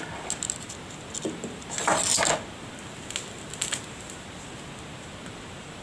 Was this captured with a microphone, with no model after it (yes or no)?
yes